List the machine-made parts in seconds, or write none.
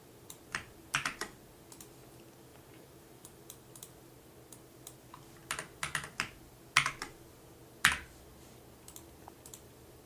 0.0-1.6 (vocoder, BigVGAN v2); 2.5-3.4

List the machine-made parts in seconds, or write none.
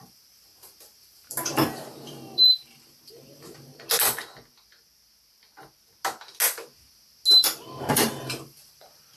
0.0-3.7 (vocoder, BigVGAN v2); 7.8-9.2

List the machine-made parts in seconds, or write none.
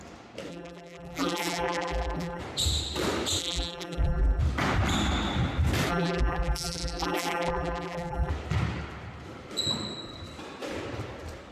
0.5-2.4 (vocoder, BigVGAN v2); 3.4-4.4; 5.9-8.3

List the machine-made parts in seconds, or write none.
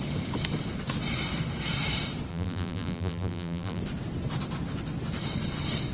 2.3-3.8 (vocoder, BigVGAN v2)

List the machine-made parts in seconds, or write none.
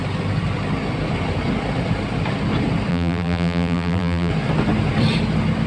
2.9-4.3 (vocoder, BigVGAN v2)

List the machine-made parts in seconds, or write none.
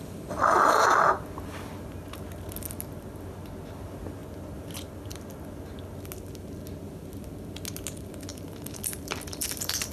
8.3-9.9 (vocoder, BigVGAN v2)